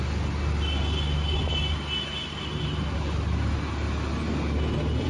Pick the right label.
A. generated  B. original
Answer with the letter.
B